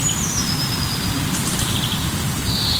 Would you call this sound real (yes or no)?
no